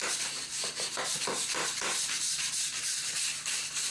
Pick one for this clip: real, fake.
fake